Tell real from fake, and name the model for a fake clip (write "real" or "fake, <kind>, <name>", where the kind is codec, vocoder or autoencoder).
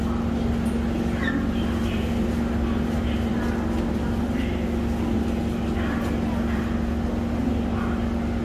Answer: real